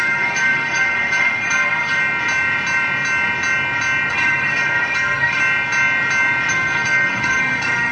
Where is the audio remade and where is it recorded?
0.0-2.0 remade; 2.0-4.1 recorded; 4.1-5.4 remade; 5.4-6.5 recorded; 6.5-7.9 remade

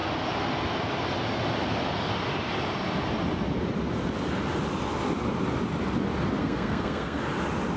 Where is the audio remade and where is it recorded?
0.0-6.4 recorded; 6.4-7.2 remade; 7.2-7.8 recorded